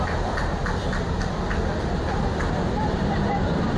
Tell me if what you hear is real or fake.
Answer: fake